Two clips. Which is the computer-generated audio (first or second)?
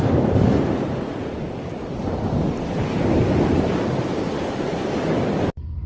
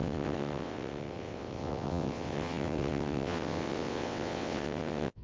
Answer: second